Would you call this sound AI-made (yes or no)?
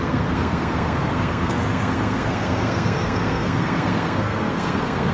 yes